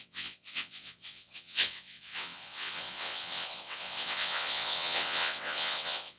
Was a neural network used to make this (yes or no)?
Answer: yes